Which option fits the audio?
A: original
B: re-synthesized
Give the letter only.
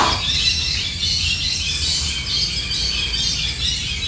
A